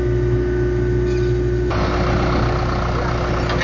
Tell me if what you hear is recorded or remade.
recorded